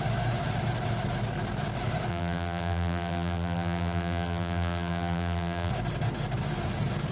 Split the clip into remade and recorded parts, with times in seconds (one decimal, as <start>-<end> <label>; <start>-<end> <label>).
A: 0.0-2.1 recorded; 2.1-5.7 remade; 5.7-7.1 recorded